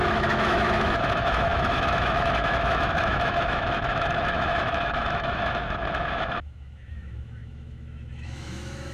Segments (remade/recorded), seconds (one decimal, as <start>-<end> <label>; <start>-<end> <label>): 0.0-8.9 remade